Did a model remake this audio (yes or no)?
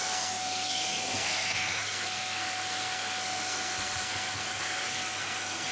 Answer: yes